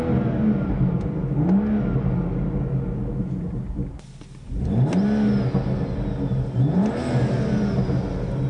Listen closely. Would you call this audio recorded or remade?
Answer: recorded